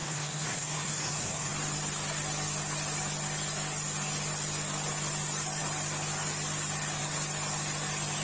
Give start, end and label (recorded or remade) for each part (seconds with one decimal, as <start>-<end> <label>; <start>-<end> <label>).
0.0-1.5 remade; 1.5-8.2 recorded